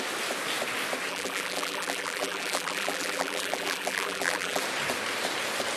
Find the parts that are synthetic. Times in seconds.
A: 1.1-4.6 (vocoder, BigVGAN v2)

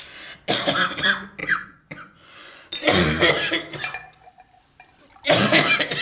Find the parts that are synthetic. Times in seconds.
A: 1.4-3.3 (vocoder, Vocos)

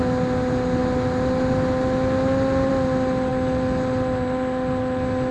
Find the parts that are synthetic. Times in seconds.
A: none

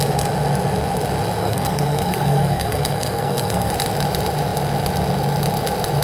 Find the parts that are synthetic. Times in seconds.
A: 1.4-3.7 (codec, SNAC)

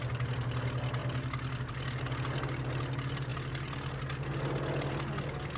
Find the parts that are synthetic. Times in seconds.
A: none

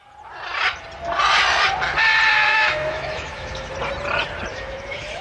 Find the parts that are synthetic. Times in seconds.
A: 2.5-3.7 (autoencoder, DAC-VAE); 4.5-5.2

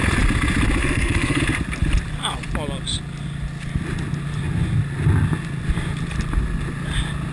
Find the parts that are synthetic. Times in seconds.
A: 0.8-1.4 (codec, SNAC)

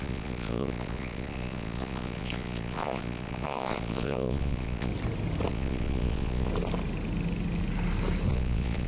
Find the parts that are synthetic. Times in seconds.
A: 0.0-4.9 (vocoder, Vocos); 5.5-6.5; 8.3-8.9